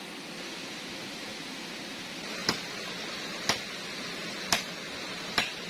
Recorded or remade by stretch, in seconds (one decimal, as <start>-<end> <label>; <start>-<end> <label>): 0.0-5.7 recorded